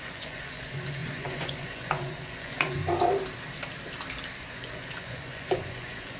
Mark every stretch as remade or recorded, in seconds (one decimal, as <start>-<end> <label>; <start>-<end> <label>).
0.0-2.8 remade; 2.8-4.4 recorded; 4.4-6.2 remade